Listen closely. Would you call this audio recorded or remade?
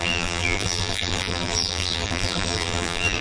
remade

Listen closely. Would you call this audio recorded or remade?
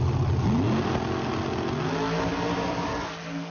recorded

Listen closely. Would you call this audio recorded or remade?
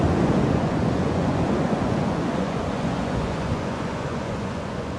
remade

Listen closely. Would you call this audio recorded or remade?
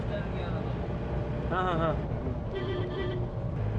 recorded